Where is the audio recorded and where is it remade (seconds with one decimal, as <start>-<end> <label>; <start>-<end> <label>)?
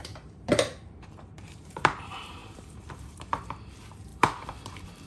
0.0-5.1 remade